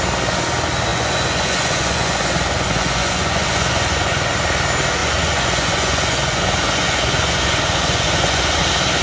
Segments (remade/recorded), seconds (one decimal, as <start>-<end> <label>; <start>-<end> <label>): 0.0-0.9 recorded; 0.9-4.3 remade; 4.3-5.0 recorded; 5.0-8.6 remade; 8.6-9.0 recorded